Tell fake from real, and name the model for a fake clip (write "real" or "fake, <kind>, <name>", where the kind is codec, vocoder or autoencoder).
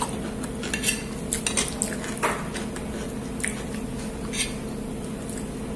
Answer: real